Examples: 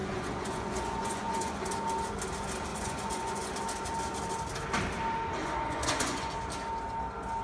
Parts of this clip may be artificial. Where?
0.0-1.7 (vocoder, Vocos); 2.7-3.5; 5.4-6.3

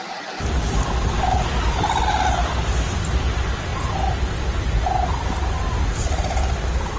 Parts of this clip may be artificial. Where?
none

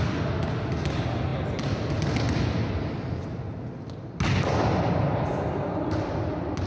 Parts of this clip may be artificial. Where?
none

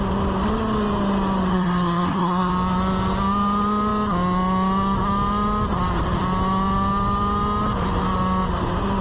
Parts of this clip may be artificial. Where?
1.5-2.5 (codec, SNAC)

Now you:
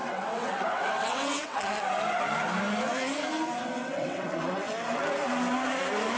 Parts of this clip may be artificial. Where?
0.0-1.6 (vocoder, WaveNeXt); 3.8-4.7